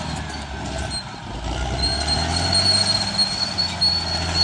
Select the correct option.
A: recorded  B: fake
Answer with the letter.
A